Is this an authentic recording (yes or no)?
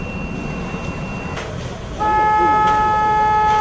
yes